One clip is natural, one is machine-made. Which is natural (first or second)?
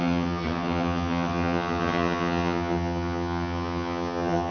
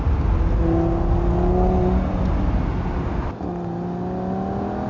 second